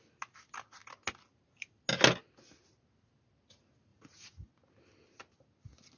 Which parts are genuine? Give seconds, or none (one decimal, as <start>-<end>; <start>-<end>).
0.0-3.9; 4.5-6.0